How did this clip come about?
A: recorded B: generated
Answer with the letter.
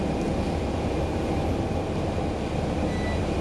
A